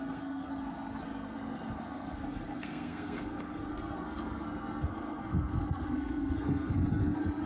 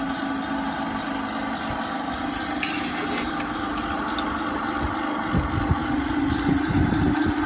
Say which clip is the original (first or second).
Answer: second